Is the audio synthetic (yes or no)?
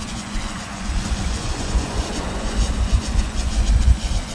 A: yes